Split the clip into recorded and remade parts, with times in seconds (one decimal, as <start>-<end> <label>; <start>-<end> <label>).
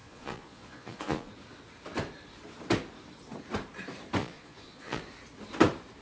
0.0-1.3 remade; 1.3-4.2 recorded; 4.2-5.0 remade; 5.0-6.0 recorded